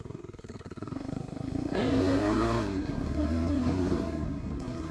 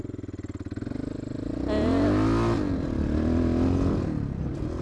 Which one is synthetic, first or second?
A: first